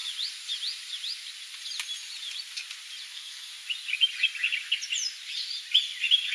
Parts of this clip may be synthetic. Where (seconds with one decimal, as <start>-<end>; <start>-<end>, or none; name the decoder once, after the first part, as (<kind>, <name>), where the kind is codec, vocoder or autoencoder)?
3.1-3.5 (codec, SNAC)